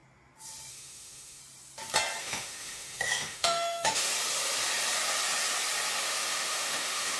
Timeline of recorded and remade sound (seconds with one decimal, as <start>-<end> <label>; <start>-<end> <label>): 0.0-0.7 recorded; 0.7-1.4 remade; 1.4-2.2 recorded; 2.2-4.1 remade; 4.1-6.0 recorded; 6.0-7.2 remade